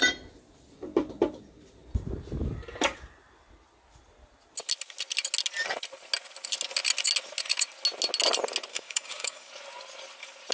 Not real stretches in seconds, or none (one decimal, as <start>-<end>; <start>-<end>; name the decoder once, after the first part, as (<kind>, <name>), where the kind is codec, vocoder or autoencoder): 8.7-9.5 (codec, DAC)